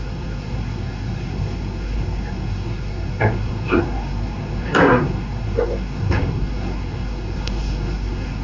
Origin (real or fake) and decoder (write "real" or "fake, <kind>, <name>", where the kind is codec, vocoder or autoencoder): fake, codec, SNAC